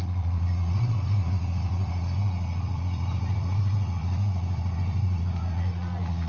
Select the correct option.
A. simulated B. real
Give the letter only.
A